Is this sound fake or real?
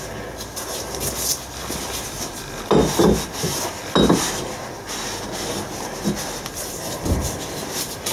real